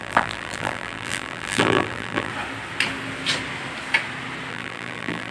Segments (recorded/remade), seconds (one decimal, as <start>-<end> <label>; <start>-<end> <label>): 0.0-2.3 remade; 2.3-4.5 recorded; 4.5-5.3 remade